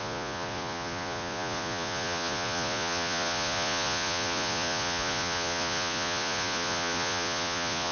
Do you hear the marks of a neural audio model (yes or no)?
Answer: yes